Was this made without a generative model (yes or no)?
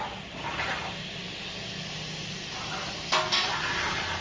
yes